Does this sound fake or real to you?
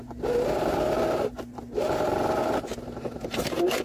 real